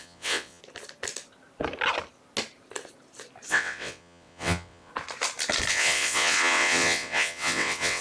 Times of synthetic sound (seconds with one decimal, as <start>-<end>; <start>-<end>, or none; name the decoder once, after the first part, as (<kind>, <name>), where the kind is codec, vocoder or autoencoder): 0.0-0.6 (vocoder, WaveNeXt); 3.5-4.9; 5.7-8.0